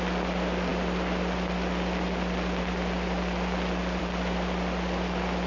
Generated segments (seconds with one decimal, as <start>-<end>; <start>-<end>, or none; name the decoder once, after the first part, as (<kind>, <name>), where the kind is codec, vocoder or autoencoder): none